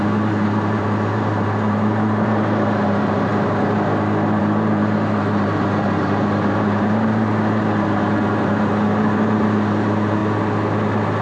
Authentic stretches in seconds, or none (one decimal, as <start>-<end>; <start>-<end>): 3.3-4.4; 10.2-11.2